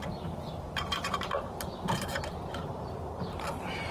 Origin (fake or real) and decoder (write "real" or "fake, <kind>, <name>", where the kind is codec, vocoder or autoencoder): fake, vocoder, BigVGAN v2